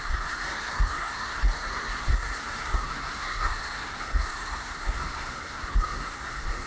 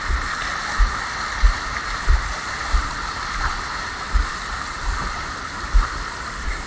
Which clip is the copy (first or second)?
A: first